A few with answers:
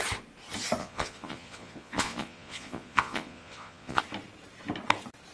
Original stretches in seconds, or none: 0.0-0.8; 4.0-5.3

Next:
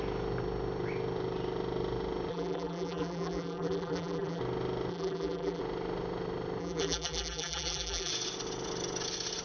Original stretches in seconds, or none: 0.0-2.3; 4.4-4.9; 5.6-6.6; 8.1-9.4

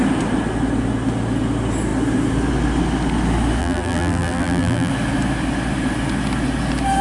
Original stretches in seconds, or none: 0.0-3.6; 4.9-7.0

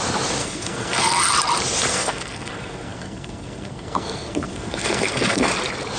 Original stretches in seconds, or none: 0.0-0.4; 1.2-1.9; 5.5-6.0

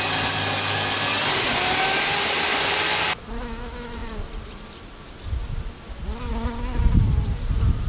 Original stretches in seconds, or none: 0.0-2.5; 3.0-7.9

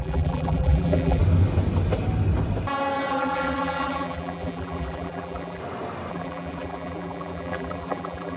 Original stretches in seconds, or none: 1.2-3.1; 5.6-6.1